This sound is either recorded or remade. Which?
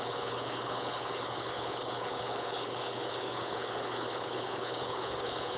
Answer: remade